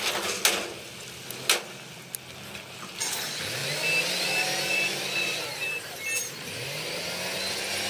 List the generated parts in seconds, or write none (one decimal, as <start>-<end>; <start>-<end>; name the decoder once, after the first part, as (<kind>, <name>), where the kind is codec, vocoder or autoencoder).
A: none